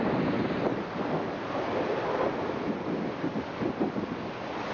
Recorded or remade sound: remade